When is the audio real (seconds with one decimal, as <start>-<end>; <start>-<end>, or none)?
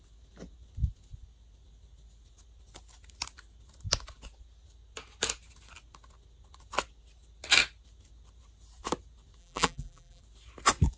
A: 0.0-9.4; 10.2-11.0